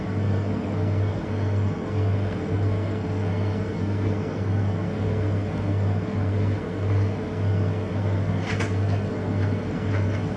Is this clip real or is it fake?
fake